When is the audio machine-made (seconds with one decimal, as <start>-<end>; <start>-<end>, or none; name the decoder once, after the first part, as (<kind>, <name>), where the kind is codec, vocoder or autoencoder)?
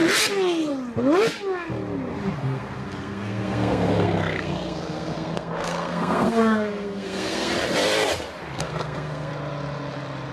2.4-7.5 (codec, SNAC); 8.5-9.3